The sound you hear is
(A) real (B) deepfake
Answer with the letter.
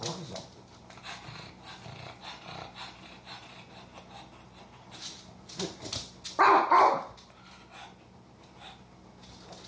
A